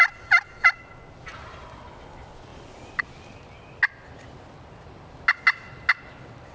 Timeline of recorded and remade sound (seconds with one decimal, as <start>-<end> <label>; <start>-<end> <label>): 0.0-6.5 recorded